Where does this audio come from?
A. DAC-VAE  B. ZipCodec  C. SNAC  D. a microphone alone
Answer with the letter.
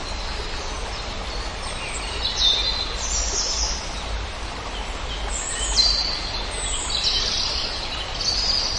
D